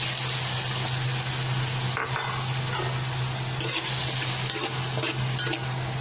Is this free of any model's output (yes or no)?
yes